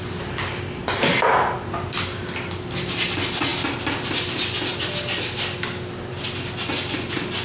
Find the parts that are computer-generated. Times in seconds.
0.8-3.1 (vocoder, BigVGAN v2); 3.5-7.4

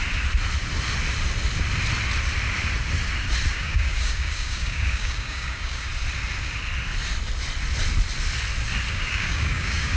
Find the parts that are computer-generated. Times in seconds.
3.5-5.9 (codec, DAC); 8.9-10.0

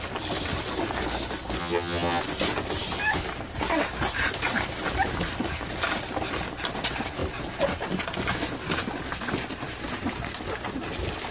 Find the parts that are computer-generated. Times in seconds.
1.6-2.2 (vocoder, HiFi-GAN)

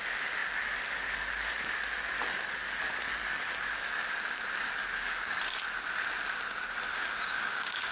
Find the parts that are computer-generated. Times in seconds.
4.8-5.4 (codec, DAC); 6.9-7.9

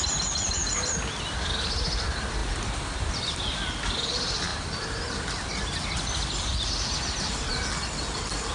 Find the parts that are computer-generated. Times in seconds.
4.5-7.5 (vocoder, BigVGAN v2)

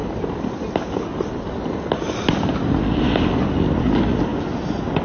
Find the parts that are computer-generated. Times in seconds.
none

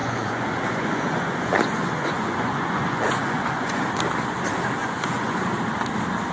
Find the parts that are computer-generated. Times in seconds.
0.0-3.8 (vocoder, Vocos); 4.8-5.4